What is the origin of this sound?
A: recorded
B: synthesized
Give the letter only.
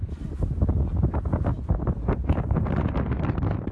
A